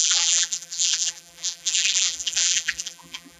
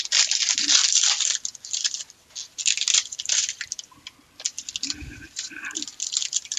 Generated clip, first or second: first